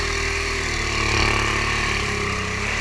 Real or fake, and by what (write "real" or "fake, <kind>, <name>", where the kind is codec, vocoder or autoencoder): real